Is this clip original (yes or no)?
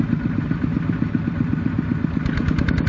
yes